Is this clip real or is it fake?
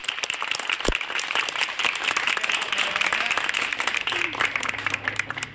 fake